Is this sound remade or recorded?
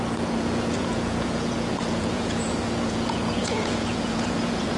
remade